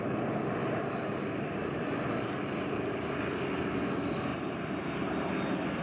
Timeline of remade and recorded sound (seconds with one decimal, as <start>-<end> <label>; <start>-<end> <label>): 0.0-0.6 recorded; 0.6-1.8 remade; 1.8-4.3 recorded; 4.3-5.3 remade; 5.3-5.8 recorded